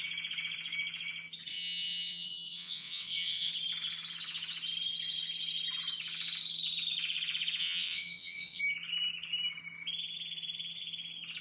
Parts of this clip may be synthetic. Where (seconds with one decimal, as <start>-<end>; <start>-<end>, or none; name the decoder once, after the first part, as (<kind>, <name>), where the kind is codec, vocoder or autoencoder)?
1.5-3.5 (vocoder, WaveNeXt); 7.6-8.6